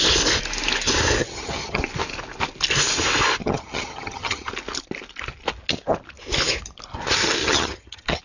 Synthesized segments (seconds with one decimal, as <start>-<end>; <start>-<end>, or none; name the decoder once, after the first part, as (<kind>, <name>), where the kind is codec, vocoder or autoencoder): 1.2-1.8 (vocoder, HiFi-GAN); 3.4-4.5; 7.4-8.2